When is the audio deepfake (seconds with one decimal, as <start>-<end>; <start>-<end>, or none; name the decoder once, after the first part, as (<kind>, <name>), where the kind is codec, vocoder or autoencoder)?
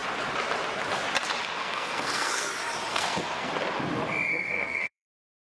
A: 1.6-2.5 (codec, SNAC); 2.9-3.5; 4.3-5.1